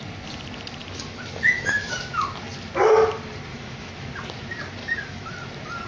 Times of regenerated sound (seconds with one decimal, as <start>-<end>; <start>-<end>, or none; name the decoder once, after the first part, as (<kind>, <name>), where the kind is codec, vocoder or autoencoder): 0.8-2.0 (autoencoder, DAC-VAE); 3.5-4.1; 4.8-5.3